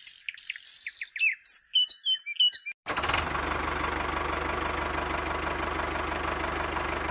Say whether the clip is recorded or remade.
recorded